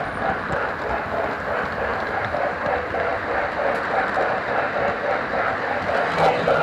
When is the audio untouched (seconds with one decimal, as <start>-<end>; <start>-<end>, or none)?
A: 0.0-6.6